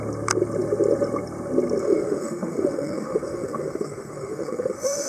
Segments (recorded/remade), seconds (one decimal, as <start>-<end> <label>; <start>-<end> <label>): 0.0-1.8 recorded; 1.8-5.1 remade